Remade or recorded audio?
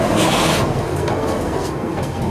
remade